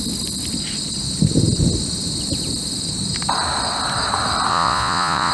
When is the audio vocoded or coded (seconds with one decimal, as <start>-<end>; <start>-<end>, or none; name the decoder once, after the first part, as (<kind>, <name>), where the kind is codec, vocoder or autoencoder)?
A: 4.5-5.3 (vocoder, Vocos)